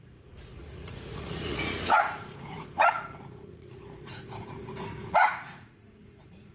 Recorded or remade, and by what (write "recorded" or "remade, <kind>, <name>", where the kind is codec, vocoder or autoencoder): remade, vocoder, Vocos